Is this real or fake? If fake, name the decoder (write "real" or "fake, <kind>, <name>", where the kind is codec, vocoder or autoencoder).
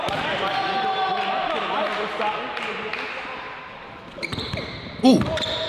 real